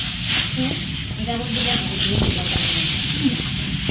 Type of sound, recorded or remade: recorded